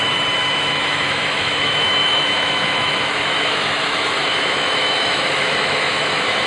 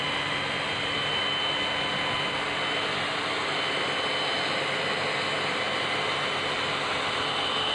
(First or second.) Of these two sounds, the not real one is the first